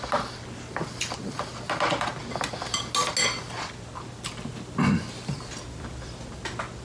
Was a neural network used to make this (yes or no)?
no